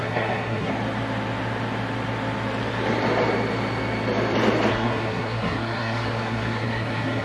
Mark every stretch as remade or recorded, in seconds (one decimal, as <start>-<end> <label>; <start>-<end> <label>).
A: 0.0-0.7 remade; 0.7-4.7 recorded; 4.7-7.2 remade